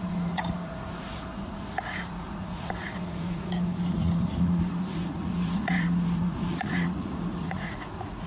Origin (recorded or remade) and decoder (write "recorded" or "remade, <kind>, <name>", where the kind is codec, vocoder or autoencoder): remade, vocoder, Vocos